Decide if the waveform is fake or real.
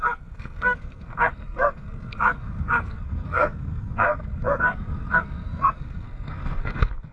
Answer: fake